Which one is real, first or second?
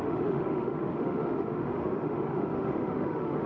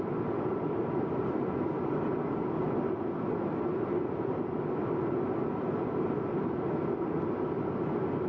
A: second